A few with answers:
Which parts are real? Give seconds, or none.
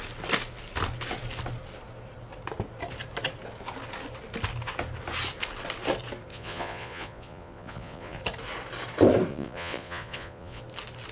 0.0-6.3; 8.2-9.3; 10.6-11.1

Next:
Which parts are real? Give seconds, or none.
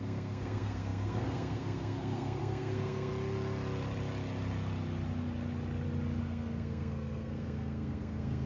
3.1-6.2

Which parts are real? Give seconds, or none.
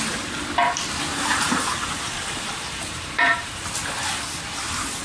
0.0-1.1; 3.5-5.0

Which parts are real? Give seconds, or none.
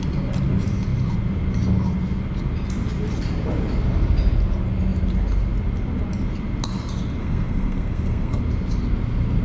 0.0-7.2; 8.4-9.4